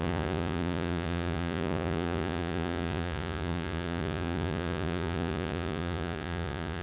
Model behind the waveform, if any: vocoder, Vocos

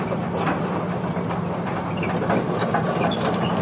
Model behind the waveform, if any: none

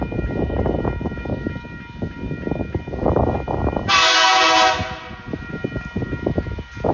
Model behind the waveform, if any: none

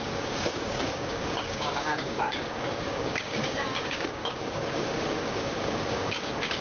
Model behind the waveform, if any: codec, DAC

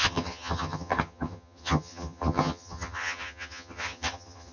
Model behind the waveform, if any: vocoder, HiFi-GAN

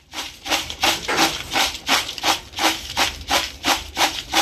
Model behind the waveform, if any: vocoder, BigVGAN v2